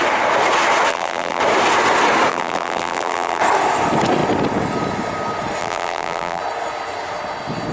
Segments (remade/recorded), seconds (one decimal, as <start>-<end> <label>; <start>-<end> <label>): 0.0-0.9 recorded; 0.9-1.4 remade; 1.4-2.3 recorded; 2.3-3.4 remade; 3.4-5.6 recorded; 5.6-6.4 remade; 6.4-7.7 recorded